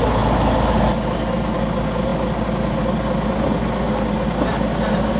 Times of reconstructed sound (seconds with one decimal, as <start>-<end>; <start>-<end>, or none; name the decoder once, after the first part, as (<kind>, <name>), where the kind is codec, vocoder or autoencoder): none